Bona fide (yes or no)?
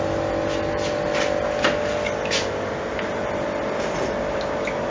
yes